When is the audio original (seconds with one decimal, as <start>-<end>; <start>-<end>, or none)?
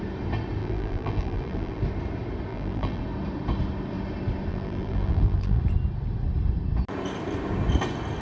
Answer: 0.0-0.6; 1.8-2.5; 3.0-4.5; 5.6-8.2